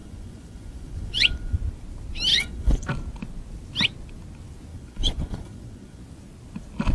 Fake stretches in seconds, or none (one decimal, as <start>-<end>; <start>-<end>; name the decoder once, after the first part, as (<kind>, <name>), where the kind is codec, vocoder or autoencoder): 0.0-1.6 (vocoder, Vocos); 2.3-2.9; 4.7-6.0